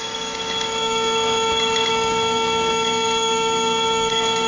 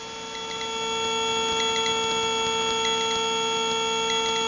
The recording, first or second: second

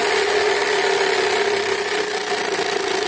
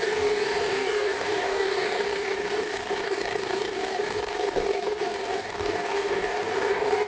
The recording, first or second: first